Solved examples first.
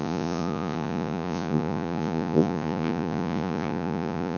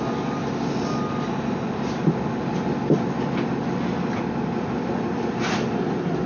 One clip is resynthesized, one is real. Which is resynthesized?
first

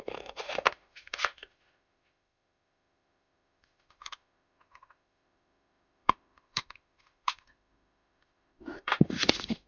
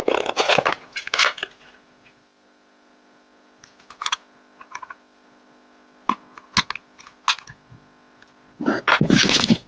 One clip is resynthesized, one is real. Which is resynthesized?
first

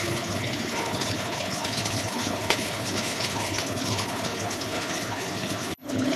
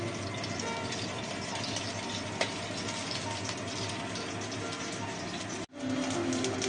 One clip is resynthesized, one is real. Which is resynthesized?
first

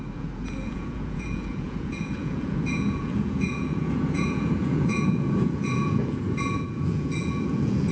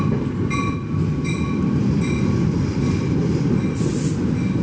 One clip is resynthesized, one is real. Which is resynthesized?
first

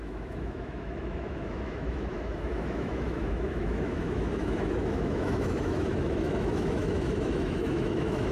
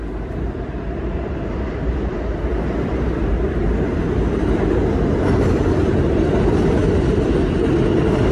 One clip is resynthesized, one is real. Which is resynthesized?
first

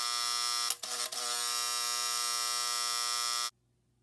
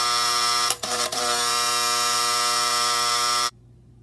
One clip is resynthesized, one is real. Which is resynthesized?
second